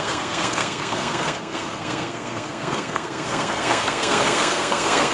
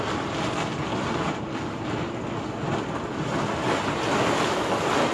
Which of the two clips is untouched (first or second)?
second